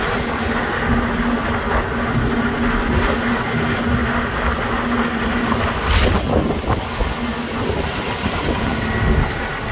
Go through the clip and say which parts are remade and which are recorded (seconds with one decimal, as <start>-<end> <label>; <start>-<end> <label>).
0.0-9.7 recorded